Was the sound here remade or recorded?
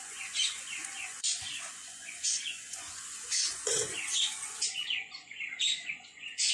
remade